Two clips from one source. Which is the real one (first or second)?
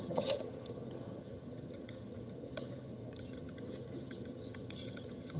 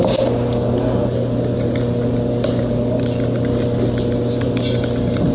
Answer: second